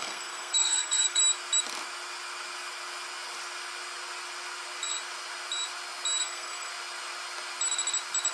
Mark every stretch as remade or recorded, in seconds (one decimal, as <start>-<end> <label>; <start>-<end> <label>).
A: 0.0-1.2 remade; 1.2-6.2 recorded; 6.2-6.7 remade; 6.7-8.3 recorded